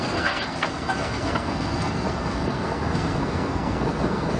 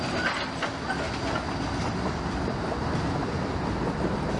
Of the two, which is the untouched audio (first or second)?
second